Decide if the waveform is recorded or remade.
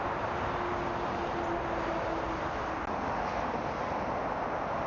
recorded